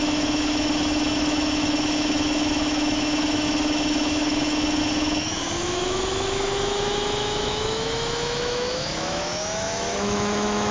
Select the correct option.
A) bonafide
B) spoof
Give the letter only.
B